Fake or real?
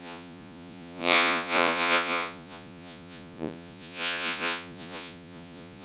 fake